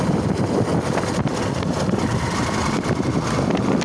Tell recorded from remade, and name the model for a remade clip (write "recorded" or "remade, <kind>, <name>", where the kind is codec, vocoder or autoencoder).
recorded